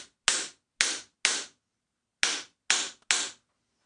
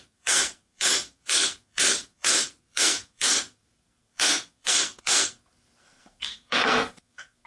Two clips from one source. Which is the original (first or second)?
first